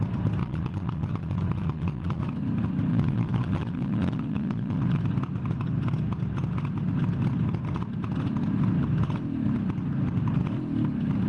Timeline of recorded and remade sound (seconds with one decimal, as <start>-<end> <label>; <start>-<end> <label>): 0.0-0.4 recorded; 0.4-2.2 remade; 2.2-2.9 recorded; 2.9-5.0 remade; 5.0-11.3 recorded